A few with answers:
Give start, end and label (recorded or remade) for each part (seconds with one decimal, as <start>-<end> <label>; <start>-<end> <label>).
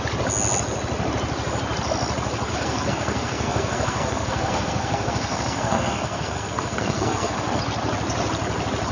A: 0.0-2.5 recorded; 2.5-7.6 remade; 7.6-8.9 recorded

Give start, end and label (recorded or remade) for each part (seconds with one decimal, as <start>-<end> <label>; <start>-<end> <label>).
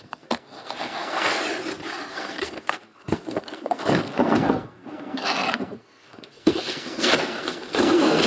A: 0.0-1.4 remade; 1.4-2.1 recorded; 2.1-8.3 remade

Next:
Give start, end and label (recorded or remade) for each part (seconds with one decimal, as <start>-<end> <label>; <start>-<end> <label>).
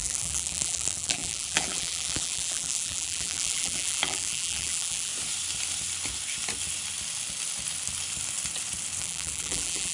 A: 0.0-5.1 remade; 5.1-9.0 recorded; 9.0-9.9 remade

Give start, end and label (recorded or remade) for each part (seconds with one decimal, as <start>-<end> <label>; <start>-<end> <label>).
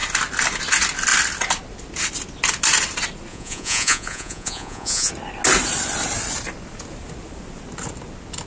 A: 0.0-3.3 recorded; 3.3-5.1 remade; 5.1-8.5 recorded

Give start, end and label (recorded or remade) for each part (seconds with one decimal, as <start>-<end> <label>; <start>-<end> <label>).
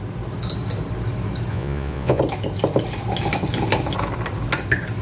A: 0.0-1.5 recorded; 1.5-2.2 remade; 2.2-5.0 recorded